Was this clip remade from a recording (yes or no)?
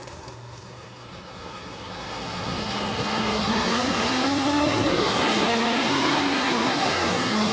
yes